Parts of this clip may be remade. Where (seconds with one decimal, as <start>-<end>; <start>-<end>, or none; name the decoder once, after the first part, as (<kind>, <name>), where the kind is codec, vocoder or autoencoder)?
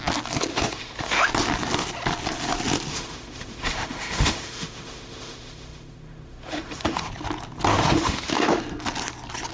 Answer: 0.5-1.3 (autoencoder, DAC-VAE); 2.9-7.1; 7.7-8.6